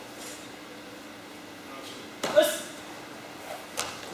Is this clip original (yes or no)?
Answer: yes